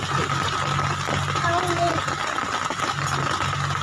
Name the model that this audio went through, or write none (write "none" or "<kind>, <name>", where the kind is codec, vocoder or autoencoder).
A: none